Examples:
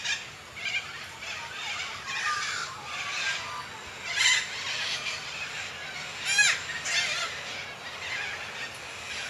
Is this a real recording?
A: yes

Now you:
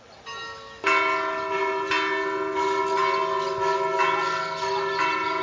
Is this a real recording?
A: yes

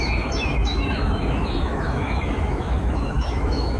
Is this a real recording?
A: no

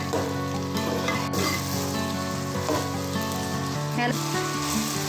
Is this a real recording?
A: yes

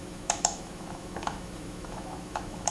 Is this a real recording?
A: no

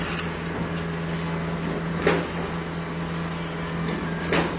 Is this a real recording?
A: yes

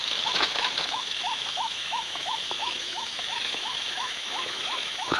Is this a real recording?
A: no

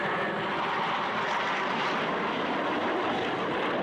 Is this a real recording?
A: yes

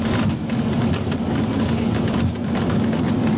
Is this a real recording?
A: yes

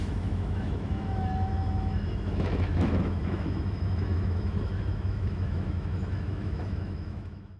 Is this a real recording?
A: no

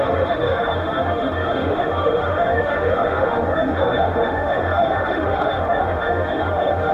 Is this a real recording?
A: no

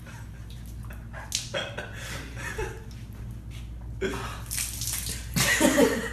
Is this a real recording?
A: yes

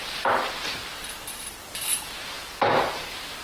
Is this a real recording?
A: yes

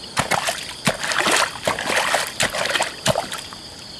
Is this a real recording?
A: yes